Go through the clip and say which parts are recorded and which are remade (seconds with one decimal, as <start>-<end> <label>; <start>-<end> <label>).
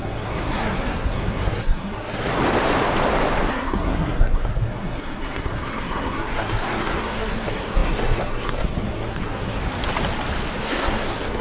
0.0-2.2 remade; 2.2-3.5 recorded; 3.5-9.6 remade; 9.6-10.6 recorded; 10.6-11.4 remade